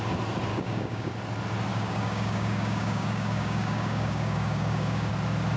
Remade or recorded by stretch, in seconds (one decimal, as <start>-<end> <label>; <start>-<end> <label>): 0.0-0.5 recorded; 0.5-1.1 remade; 1.1-1.7 recorded; 1.7-5.1 remade; 5.1-5.6 recorded